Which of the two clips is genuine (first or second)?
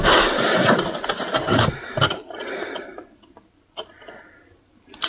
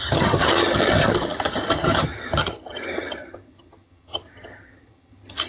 first